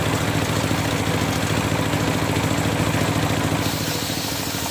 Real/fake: real